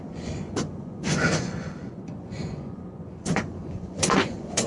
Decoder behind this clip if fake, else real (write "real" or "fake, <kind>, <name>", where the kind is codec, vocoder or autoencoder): fake, vocoder, Vocos